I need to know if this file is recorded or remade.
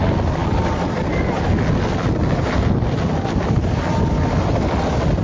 recorded